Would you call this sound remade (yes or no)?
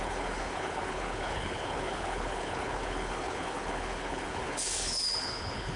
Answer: yes